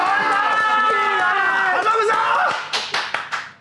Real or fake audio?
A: real